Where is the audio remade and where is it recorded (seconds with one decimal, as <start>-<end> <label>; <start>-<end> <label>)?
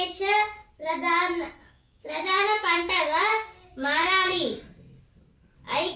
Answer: 0.0-1.6 recorded; 1.6-4.3 remade; 4.3-6.0 recorded